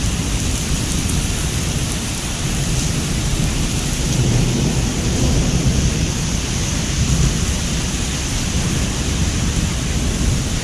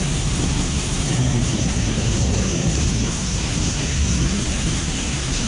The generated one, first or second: second